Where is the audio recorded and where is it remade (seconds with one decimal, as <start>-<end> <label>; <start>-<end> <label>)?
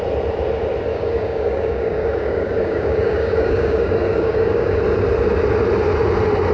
0.0-0.9 recorded; 0.9-4.8 remade; 4.8-6.5 recorded